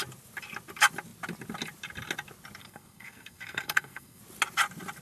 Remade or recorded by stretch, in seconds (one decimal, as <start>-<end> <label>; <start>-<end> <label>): 0.0-2.6 recorded; 2.6-4.2 remade; 4.2-5.0 recorded